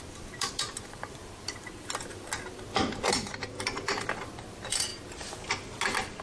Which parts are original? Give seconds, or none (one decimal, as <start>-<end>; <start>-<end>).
2.7-3.6; 4.9-6.2